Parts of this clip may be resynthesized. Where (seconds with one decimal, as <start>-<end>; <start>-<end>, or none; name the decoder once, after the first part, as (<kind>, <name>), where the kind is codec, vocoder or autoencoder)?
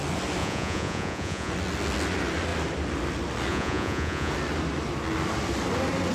0.4-1.5 (vocoder, Vocos); 3.5-4.3